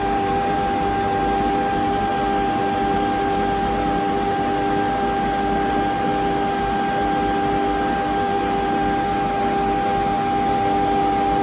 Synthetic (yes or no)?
no